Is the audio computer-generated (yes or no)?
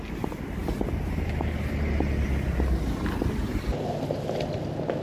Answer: no